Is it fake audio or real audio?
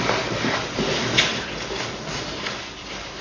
real